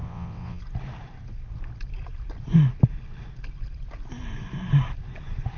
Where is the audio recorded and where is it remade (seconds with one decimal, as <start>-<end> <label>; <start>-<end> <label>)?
0.0-0.6 remade; 0.6-5.6 recorded